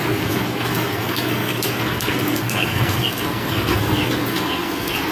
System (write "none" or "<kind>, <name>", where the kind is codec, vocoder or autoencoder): codec, SNAC